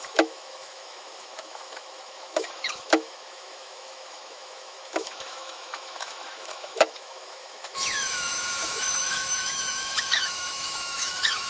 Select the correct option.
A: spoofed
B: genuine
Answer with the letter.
A